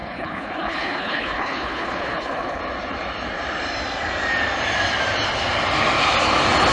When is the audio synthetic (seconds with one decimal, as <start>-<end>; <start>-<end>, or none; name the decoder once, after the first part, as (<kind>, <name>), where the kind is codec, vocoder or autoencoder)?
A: 0.0-2.6 (codec, HILCodec)